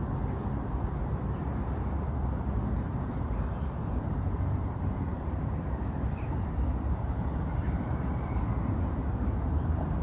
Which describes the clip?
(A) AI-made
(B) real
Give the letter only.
A